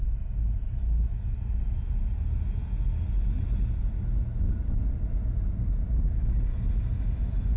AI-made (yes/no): no